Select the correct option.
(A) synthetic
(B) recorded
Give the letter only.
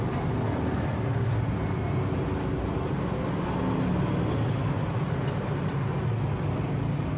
B